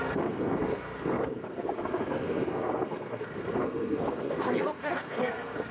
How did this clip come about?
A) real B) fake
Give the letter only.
B